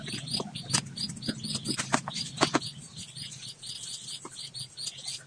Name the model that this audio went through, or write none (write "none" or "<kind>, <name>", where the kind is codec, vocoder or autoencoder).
none